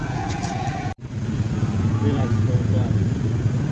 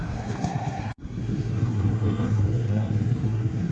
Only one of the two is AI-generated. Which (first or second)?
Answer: second